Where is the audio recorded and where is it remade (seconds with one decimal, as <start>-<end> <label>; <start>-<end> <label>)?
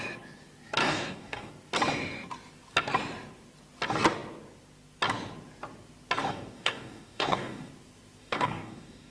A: 0.0-0.8 recorded; 0.8-1.5 remade; 1.5-6.2 recorded; 6.2-7.7 remade; 7.7-8.2 recorded; 8.2-9.1 remade